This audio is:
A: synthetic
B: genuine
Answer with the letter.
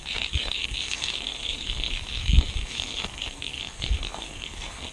A